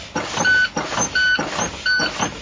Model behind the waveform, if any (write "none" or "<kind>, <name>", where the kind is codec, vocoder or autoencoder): none